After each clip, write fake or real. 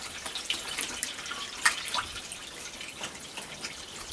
real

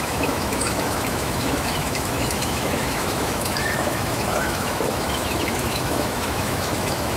fake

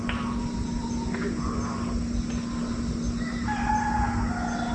real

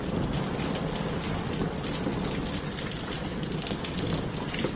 real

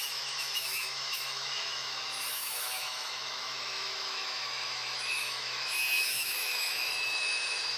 fake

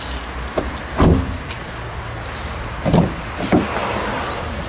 real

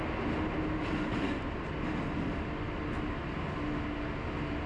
real